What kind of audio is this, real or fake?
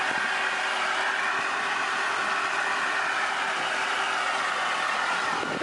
real